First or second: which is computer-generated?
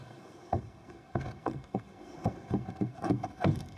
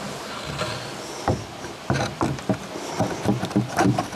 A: first